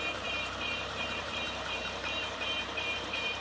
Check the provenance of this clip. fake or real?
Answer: fake